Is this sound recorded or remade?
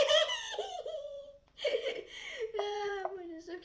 remade